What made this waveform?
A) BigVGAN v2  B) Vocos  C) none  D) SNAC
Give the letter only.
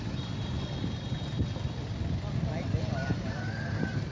C